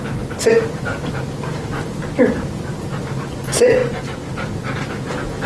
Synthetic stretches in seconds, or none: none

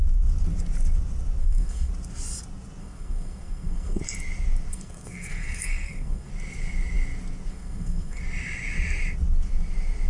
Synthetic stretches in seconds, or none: 1.4-1.9 (codec, SNAC); 2.8-4.0; 4.7-6.3; 7.5-8.2

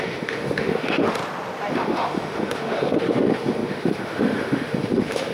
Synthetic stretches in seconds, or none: 0.0-1.2 (autoencoder, DAC-VAE); 1.7-5.3

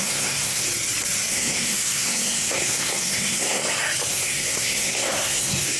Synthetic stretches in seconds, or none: 0.0-0.7 (codec, SNAC); 1.3-3.6; 4.1-5.8